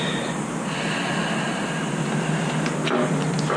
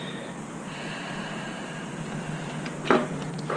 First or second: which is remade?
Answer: second